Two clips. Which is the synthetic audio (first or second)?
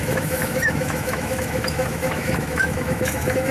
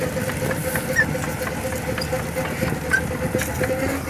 first